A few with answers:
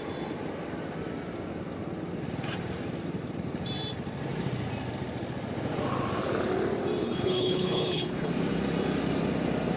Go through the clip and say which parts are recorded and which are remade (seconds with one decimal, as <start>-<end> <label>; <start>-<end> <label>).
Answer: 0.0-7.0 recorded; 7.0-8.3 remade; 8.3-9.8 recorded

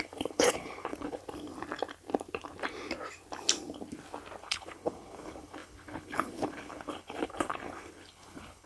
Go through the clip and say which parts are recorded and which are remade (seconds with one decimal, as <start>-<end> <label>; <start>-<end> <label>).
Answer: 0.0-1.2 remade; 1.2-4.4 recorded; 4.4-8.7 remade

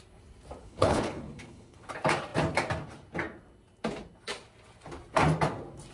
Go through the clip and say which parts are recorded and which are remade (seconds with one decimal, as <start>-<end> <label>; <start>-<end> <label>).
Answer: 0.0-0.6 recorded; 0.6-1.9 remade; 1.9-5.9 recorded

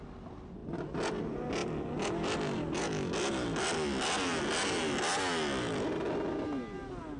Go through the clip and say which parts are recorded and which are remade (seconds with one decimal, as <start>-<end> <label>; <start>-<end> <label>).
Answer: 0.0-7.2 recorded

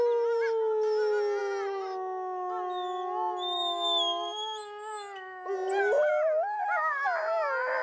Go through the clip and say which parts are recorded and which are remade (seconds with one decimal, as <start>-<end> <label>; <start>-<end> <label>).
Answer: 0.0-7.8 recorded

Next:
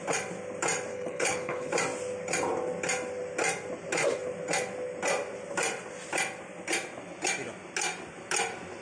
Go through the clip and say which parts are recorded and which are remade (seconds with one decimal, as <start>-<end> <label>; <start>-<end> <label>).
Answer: 0.0-0.9 recorded; 0.9-1.7 remade; 1.7-8.8 recorded

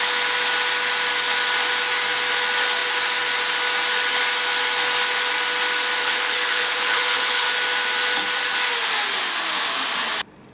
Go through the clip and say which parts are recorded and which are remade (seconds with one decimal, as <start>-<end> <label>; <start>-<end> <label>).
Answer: 0.0-6.0 recorded; 6.0-7.5 remade; 7.5-10.5 recorded